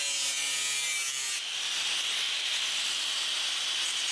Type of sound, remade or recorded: recorded